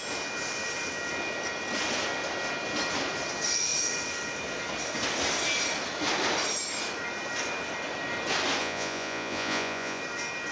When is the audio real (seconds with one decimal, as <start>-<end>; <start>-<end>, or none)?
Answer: 0.0-8.6; 10.0-10.5